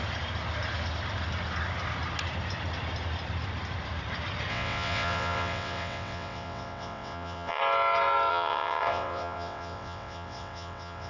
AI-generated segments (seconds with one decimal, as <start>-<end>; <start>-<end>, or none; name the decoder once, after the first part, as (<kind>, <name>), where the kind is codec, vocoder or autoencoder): 4.5-7.6 (vocoder, WaveNeXt); 8.3-11.1